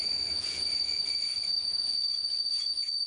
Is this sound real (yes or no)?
no